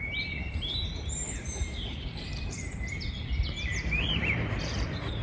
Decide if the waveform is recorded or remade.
remade